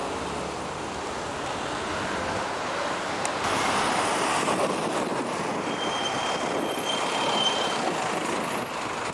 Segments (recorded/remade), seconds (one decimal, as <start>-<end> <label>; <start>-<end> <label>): 0.0-1.9 remade; 1.9-5.1 recorded; 5.1-8.5 remade; 8.5-9.1 recorded